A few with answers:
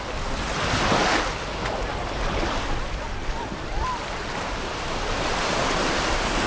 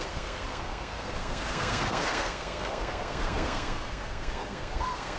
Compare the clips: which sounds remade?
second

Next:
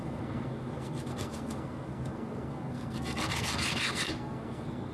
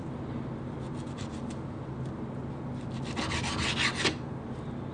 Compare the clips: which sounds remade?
first